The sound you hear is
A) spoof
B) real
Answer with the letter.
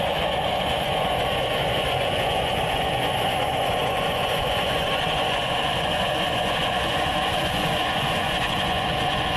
A